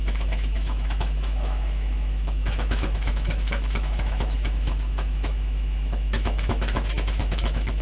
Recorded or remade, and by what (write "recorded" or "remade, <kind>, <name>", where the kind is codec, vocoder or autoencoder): remade, autoencoder, DAC-VAE